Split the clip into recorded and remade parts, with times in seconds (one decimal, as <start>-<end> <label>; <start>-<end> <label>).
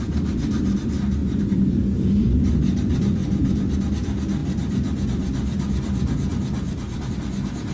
0.0-7.7 recorded